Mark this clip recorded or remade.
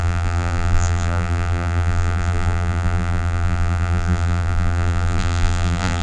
remade